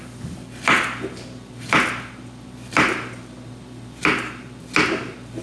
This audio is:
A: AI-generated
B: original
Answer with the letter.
B